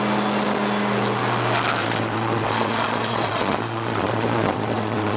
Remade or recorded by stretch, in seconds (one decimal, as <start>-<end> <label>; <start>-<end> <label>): 0.0-1.8 recorded; 1.8-5.2 remade